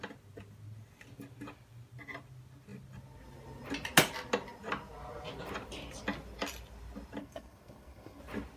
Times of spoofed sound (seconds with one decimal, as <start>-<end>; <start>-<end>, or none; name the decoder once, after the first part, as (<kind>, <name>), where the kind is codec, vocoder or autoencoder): 7.2-8.2 (codec, SNAC)